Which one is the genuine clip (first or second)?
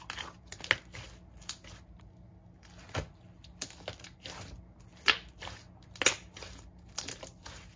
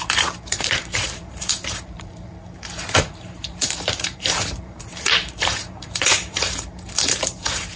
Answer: first